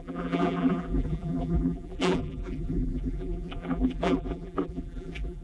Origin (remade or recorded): remade